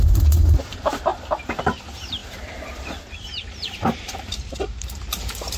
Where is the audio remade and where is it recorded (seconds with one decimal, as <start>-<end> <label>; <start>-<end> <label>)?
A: 0.0-5.6 remade